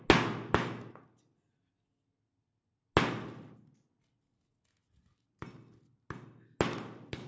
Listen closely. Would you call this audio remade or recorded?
recorded